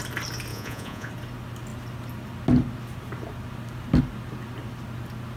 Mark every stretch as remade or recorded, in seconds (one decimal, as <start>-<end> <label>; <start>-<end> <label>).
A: 0.0-0.5 recorded; 0.5-1.1 remade; 1.1-5.4 recorded